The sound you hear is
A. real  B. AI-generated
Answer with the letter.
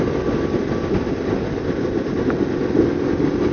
A